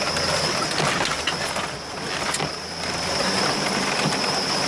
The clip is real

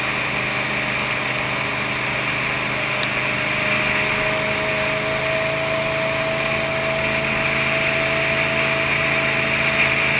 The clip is real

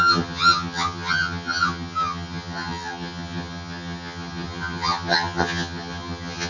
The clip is fake